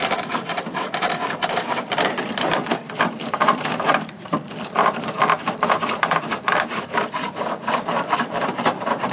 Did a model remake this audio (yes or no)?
yes